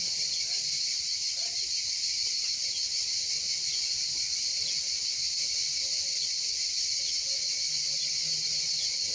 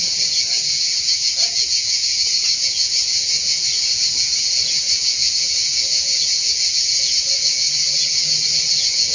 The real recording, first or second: first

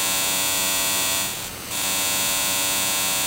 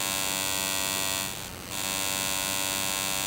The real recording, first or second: second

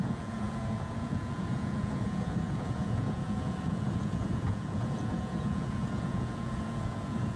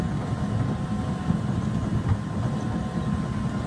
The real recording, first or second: second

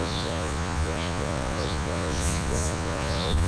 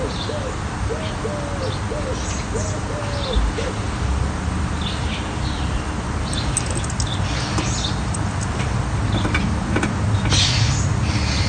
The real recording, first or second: second